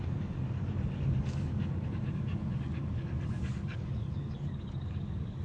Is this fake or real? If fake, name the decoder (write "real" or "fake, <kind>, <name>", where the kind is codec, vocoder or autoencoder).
fake, codec, DAC